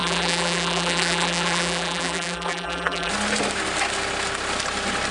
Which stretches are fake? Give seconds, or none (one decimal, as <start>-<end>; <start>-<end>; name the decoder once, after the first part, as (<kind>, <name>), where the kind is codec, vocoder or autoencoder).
0.0-3.1 (vocoder, BigVGAN v2)